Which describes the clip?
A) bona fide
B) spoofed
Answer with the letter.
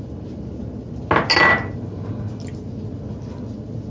A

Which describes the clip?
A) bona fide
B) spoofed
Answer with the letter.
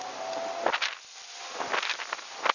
A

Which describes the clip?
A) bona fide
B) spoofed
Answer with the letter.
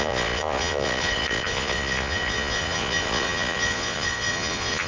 B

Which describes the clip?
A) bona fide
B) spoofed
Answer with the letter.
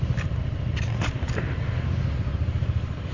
A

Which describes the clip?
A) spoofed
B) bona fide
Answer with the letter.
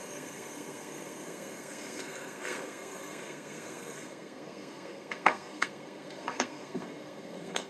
A